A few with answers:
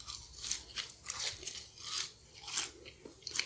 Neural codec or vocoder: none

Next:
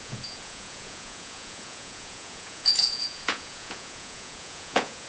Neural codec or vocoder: vocoder, Vocos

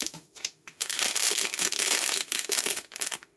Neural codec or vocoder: autoencoder, DAC-VAE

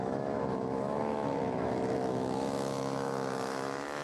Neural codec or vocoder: autoencoder, DAC-VAE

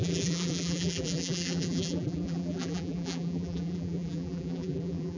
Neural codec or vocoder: vocoder, BigVGAN v2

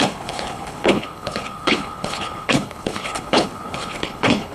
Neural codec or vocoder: codec, HILCodec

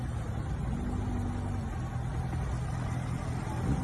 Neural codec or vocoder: none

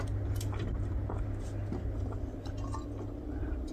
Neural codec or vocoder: none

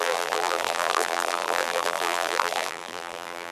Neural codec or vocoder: vocoder, BigVGAN v2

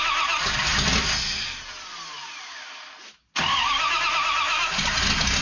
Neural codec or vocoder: none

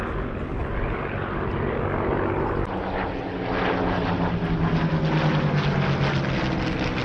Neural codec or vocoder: none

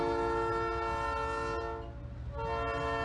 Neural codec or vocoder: none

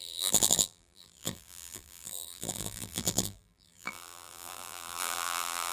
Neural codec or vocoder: vocoder, BigVGAN v2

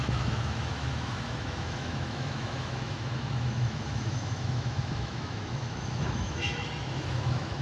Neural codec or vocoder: autoencoder, DAC-VAE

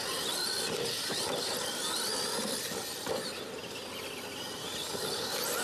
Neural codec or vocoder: none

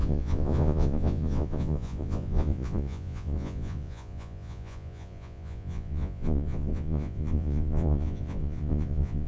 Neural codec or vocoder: vocoder, Vocos